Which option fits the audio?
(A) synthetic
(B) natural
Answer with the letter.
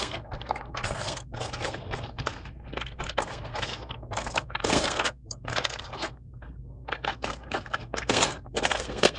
A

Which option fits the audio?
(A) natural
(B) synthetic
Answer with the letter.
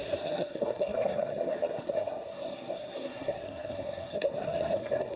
B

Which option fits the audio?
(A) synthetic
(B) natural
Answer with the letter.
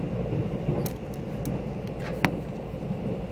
B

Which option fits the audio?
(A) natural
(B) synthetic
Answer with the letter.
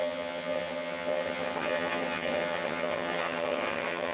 B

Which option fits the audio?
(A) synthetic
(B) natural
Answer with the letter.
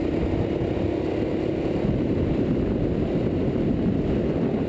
B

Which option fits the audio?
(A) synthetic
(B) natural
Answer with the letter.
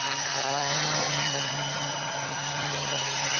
A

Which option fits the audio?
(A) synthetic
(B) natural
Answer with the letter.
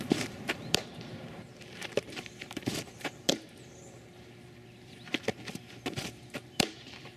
A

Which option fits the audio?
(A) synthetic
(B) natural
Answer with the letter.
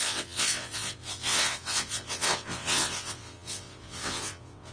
A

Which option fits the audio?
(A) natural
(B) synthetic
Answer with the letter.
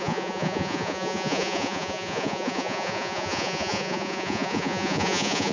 B